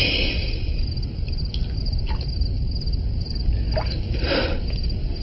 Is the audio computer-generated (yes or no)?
no